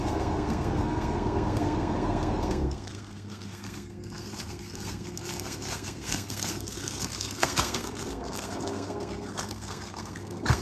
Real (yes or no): no